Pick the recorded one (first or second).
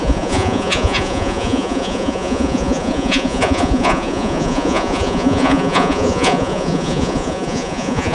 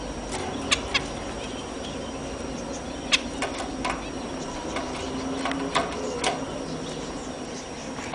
second